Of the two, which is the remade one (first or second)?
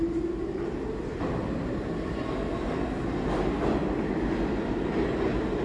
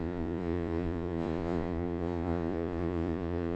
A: second